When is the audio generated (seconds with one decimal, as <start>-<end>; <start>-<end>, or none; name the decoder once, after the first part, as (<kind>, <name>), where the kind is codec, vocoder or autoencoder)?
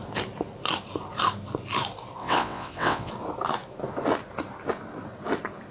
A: 2.2-3.1 (vocoder, WaveNeXt)